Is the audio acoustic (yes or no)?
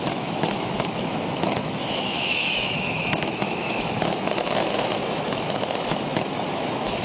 no